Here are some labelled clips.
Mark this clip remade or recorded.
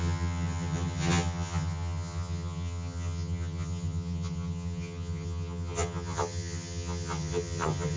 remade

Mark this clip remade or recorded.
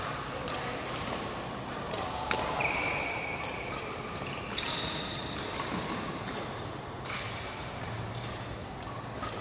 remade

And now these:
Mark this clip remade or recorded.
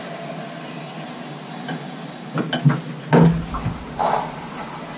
recorded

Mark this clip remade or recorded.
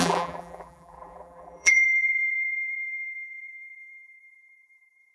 remade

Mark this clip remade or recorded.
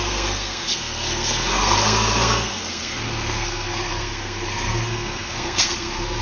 remade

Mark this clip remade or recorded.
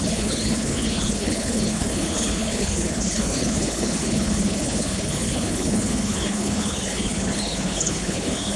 remade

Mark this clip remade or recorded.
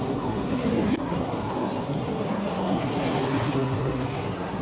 remade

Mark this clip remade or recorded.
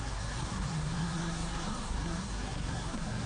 remade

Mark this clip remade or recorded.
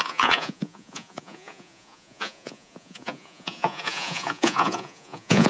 remade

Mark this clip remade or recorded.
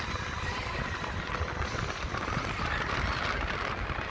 recorded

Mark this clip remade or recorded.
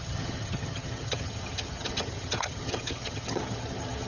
remade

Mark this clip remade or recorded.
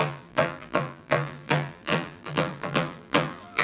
remade